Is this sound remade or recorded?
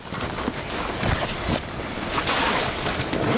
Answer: recorded